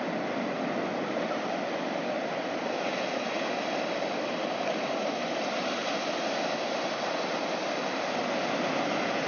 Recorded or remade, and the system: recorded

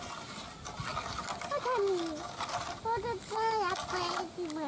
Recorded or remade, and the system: recorded